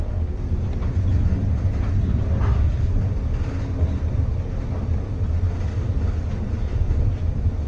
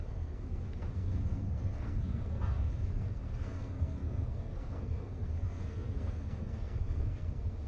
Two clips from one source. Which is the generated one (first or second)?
second